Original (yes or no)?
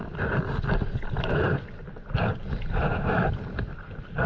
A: no